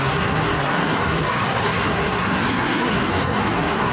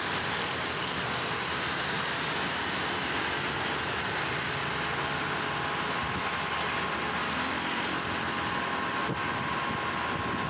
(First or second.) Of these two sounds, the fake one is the first